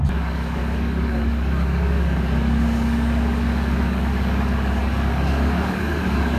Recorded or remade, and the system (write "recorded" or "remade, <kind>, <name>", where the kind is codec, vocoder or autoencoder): remade, codec, DAC